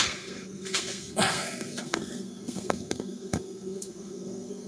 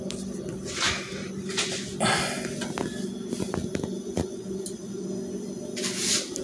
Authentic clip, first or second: second